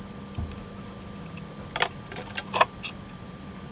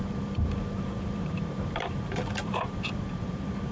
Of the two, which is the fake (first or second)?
second